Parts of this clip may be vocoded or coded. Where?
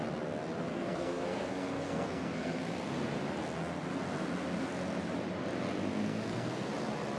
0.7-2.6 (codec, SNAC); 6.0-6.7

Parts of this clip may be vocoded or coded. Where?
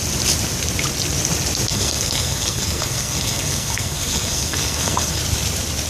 1.7-5.2 (codec, SNAC)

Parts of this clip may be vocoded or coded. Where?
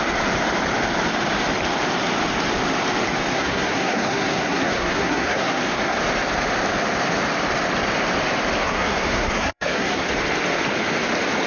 3.3-6.0 (codec, SNAC); 8.6-10.1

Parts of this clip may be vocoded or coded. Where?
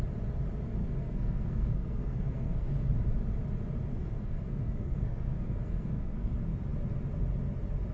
0.8-2.7 (codec, SNAC); 3.9-6.3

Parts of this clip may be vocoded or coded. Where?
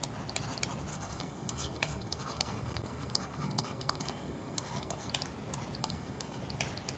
0.9-5.1 (codec, SNAC); 5.8-6.4